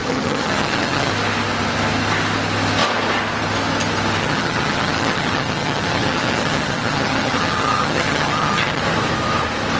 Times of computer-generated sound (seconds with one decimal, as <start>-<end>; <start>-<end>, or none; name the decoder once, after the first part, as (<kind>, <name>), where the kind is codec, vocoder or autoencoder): 0.0-1.1 (vocoder, HiFi-GAN); 4.2-8.8